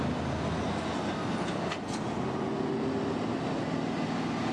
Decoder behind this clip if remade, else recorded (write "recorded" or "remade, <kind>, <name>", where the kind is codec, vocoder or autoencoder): recorded